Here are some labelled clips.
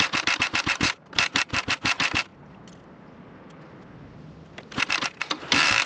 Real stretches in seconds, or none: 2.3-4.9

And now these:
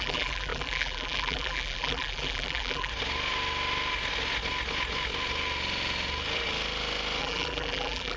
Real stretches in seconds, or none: 2.9-7.2

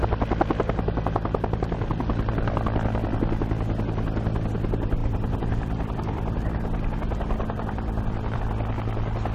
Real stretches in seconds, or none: 0.0-5.0; 8.4-9.3

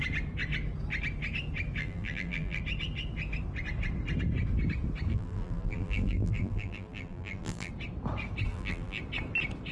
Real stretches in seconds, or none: 0.0-1.8; 2.6-5.1; 7.7-8.5; 9.0-9.7

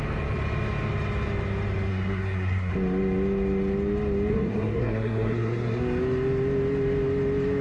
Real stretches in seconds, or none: 0.0-1.9; 2.7-4.3; 5.8-7.6

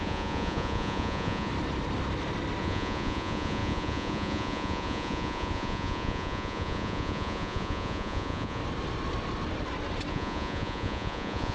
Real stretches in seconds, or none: 1.5-2.6; 8.6-10.1